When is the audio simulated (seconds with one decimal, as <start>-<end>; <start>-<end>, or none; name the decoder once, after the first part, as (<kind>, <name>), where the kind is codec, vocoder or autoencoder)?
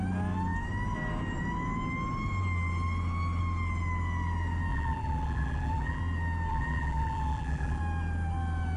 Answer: 4.7-6.0 (vocoder, BigVGAN v2); 6.5-7.8